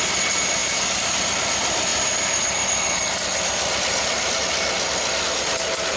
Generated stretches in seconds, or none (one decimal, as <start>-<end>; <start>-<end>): none